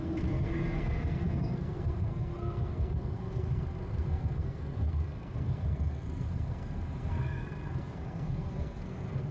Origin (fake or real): fake